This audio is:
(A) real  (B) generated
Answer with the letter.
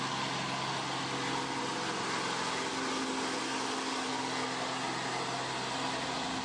A